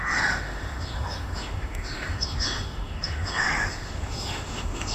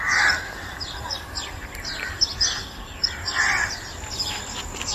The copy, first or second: first